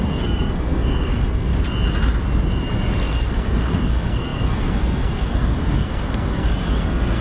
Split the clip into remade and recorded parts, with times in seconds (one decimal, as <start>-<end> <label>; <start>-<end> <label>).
0.0-1.5 remade; 1.5-3.1 recorded; 3.1-7.2 remade